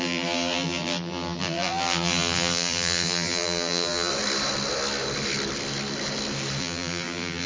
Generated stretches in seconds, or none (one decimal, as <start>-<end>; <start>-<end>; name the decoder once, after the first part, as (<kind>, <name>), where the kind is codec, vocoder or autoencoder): 0.0-4.1 (vocoder, BigVGAN v2); 6.6-7.5

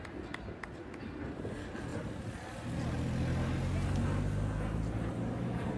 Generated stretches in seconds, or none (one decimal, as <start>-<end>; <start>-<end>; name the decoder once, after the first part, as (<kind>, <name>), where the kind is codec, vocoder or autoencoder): none

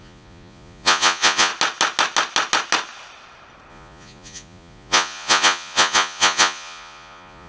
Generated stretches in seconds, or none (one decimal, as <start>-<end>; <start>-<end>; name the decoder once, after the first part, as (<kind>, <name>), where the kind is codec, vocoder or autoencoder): 0.0-1.5 (vocoder, Vocos); 3.7-7.5

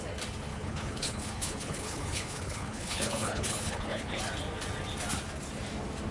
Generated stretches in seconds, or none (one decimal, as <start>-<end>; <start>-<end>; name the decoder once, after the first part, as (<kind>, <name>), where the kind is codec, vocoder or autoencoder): 0.5-4.2 (codec, HILCodec)

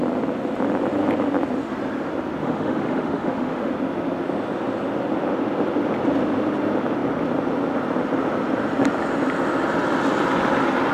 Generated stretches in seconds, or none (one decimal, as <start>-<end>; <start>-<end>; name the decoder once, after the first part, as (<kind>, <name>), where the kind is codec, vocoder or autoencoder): 2.4-3.7 (autoencoder, DAC-VAE)

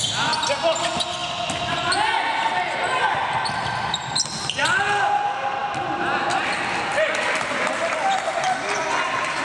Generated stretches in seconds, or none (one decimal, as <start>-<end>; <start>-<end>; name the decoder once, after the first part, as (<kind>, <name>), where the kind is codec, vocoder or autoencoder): none